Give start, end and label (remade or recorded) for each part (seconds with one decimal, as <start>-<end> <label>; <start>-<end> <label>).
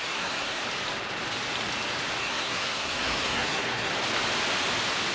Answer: 0.0-0.6 remade; 0.6-2.2 recorded; 2.2-3.9 remade; 3.9-5.1 recorded